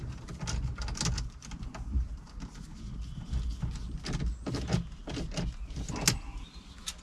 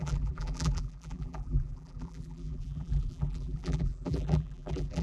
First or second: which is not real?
second